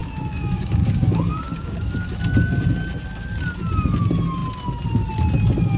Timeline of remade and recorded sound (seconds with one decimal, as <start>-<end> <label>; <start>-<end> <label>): 0.0-1.9 remade; 1.9-5.8 recorded